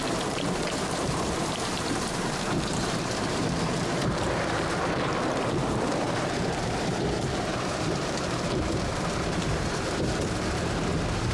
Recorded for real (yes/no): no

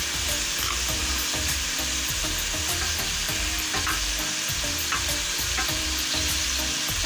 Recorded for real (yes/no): no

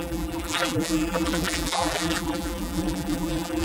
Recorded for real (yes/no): no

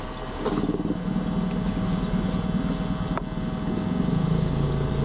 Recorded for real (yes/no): yes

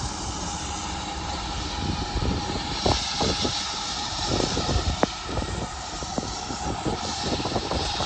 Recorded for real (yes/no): no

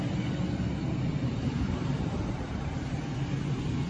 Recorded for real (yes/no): yes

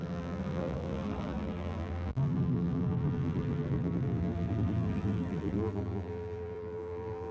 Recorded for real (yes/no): no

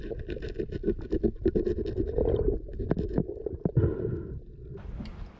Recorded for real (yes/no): yes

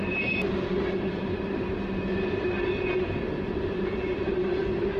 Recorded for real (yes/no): no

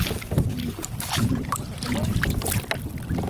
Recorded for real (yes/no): yes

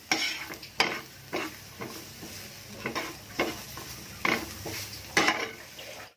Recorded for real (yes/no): yes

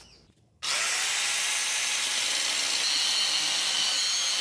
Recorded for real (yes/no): yes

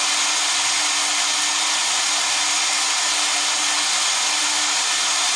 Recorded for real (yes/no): yes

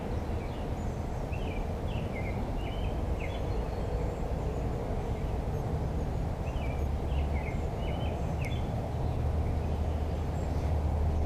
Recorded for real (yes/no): yes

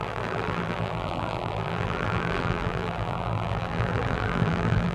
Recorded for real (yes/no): no